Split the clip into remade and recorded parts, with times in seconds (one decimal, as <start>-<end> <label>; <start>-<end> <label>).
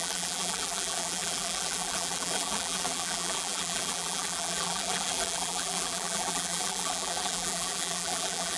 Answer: 0.0-8.6 remade